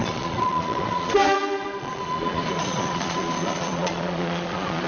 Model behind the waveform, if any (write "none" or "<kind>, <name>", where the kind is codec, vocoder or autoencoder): vocoder, Vocos